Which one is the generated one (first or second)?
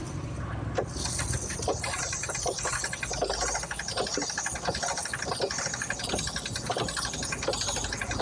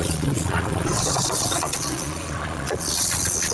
second